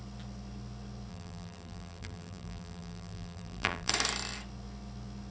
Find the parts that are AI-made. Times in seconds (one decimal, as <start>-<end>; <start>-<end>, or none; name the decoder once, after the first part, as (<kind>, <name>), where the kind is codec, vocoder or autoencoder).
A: 1.1-3.9 (vocoder, BigVGAN v2)